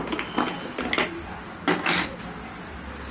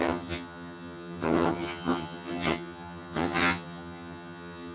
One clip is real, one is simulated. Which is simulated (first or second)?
second